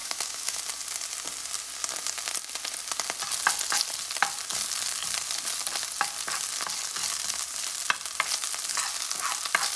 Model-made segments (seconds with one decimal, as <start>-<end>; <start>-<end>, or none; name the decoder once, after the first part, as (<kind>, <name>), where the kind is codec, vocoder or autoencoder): 0.0-0.6 (autoencoder, DAC-VAE)